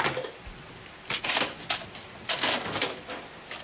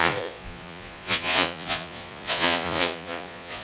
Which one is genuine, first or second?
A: first